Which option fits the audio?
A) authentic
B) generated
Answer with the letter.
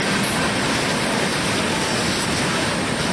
A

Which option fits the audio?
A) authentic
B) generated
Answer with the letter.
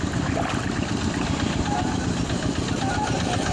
A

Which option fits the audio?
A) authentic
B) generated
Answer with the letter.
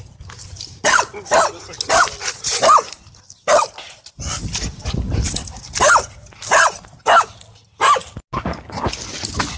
A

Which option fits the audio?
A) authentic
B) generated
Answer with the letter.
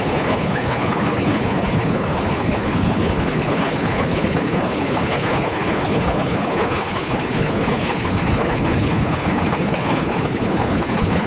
B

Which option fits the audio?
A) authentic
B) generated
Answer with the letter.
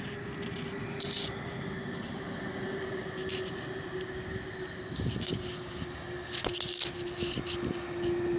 A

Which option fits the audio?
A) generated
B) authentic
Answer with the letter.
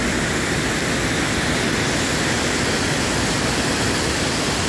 B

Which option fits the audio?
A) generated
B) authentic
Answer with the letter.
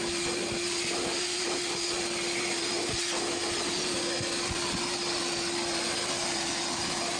B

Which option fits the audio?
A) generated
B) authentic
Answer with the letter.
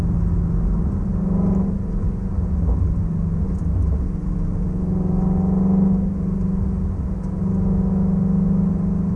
B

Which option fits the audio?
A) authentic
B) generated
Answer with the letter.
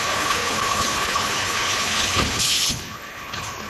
B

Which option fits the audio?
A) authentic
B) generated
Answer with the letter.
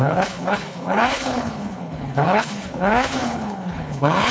B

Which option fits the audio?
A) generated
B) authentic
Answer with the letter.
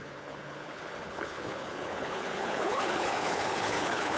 A